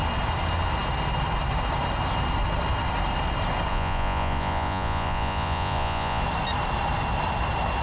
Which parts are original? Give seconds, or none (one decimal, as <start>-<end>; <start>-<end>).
0.0-3.7; 6.2-7.8